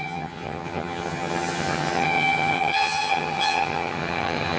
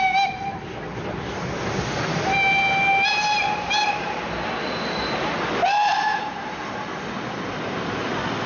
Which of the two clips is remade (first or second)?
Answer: first